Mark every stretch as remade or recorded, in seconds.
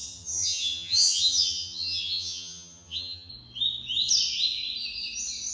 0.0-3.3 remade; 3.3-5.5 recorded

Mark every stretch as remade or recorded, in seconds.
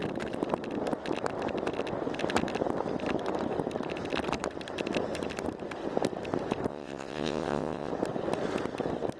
0.0-6.7 recorded; 6.7-7.9 remade; 7.9-9.2 recorded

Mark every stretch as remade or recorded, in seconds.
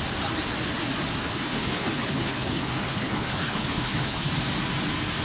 0.0-1.2 recorded; 1.2-4.3 remade; 4.3-5.2 recorded